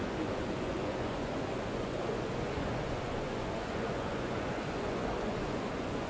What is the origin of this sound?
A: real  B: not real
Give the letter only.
B